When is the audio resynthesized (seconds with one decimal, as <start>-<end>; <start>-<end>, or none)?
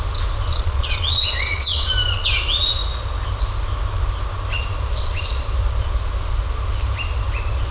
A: 0.5-1.9